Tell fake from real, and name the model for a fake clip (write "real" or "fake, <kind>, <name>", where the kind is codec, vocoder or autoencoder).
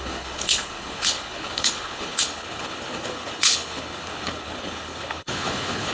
fake, codec, HILCodec